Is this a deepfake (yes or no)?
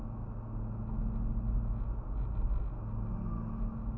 no